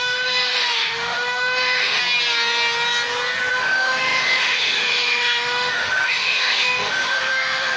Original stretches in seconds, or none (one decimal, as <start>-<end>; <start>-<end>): 2.0-3.5